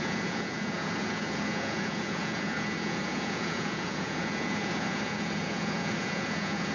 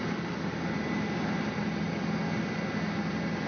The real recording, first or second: second